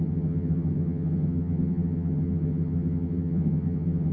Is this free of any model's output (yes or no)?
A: no